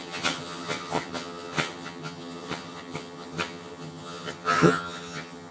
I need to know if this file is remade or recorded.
remade